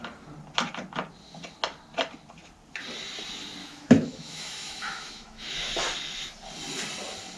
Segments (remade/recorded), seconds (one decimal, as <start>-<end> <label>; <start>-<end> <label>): 0.0-3.6 recorded; 3.6-5.7 remade; 5.7-7.4 recorded